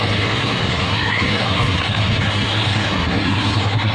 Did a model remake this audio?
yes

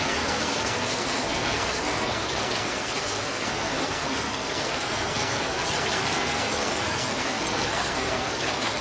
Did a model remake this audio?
yes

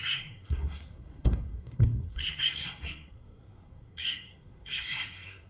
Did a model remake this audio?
yes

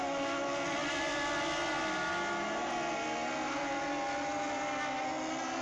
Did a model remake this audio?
no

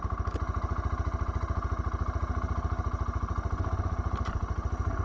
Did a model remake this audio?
no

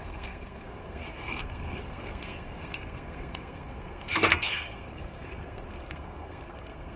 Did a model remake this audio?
yes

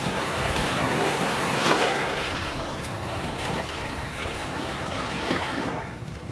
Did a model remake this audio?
yes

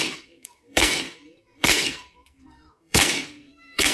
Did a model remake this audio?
yes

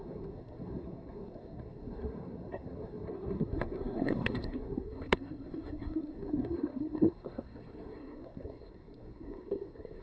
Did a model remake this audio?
yes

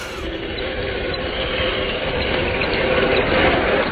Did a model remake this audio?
no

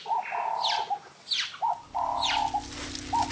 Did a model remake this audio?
no